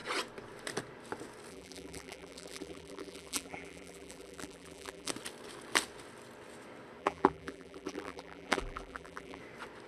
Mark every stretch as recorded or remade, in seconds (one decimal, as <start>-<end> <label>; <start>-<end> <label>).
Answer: 0.0-1.5 recorded; 1.5-5.1 remade; 5.1-7.0 recorded; 7.0-9.4 remade; 9.4-9.9 recorded